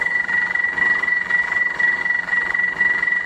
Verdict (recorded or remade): remade